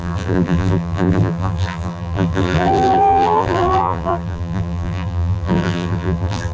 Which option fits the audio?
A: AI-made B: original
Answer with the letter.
A